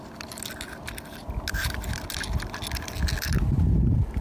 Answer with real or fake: real